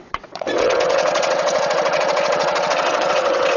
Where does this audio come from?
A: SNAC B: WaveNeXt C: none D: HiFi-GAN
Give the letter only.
B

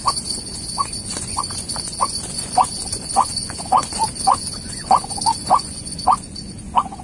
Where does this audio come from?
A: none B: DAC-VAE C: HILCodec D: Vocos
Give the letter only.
D